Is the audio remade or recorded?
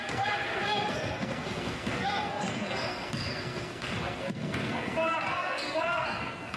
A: remade